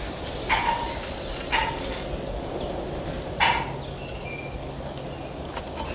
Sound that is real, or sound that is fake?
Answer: real